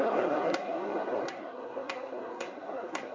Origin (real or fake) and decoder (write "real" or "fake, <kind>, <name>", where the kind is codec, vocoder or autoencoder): fake, codec, SNAC